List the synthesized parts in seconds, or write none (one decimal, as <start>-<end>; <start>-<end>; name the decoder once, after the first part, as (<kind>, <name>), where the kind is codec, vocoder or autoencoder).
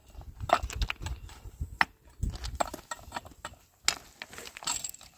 none